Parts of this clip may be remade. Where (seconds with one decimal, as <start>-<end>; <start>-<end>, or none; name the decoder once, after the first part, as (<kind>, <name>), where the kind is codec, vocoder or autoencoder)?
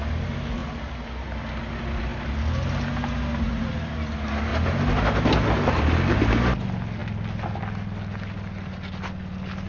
none